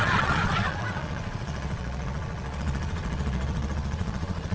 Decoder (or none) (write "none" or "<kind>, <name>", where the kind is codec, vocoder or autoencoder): vocoder, Vocos